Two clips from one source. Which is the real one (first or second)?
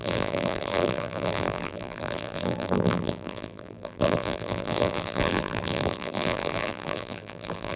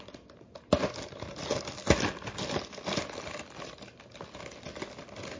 second